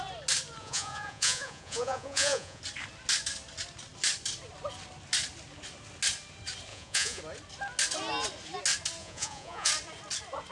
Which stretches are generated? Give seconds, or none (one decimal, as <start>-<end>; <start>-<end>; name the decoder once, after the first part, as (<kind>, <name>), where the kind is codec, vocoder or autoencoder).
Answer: 0.6-2.6 (vocoder, Vocos); 6.7-7.2; 9.0-9.7